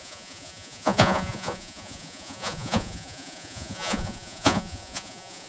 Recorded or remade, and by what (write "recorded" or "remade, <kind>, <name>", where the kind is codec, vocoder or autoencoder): remade, vocoder, Vocos